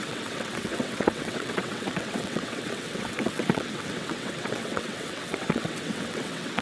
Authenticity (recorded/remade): remade